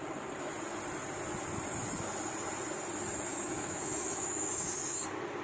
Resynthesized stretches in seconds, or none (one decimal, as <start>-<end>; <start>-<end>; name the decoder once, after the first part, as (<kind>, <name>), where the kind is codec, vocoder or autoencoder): 3.3-4.8 (autoencoder, DAC-VAE)